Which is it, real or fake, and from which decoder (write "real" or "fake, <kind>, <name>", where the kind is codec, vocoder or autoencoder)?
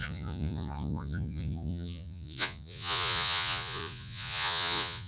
fake, vocoder, Vocos